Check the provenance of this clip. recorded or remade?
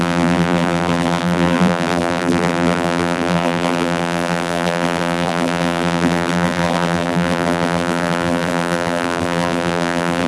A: remade